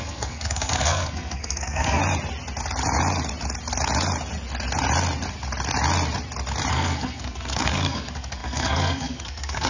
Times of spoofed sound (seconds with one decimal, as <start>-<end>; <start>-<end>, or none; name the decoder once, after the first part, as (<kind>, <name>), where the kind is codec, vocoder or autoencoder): 0.0-2.0 (codec, SNAC); 6.7-9.7